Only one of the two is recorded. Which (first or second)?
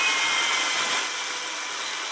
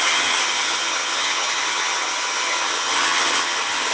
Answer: first